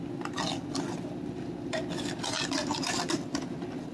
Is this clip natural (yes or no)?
yes